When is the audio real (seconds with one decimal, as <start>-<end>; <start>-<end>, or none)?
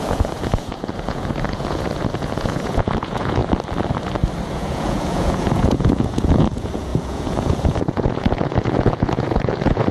3.4-4.5